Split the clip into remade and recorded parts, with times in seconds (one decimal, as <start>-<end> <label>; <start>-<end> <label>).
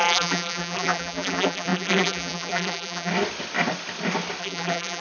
0.0-3.1 remade; 3.1-4.4 recorded; 4.4-5.0 remade